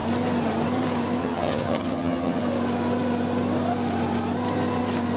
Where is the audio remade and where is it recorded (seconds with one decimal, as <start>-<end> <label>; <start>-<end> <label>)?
0.0-1.2 recorded; 1.2-2.4 remade; 2.4-5.2 recorded